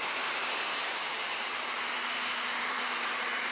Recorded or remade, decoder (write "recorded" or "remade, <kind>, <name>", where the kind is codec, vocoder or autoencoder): remade, vocoder, BigVGAN v2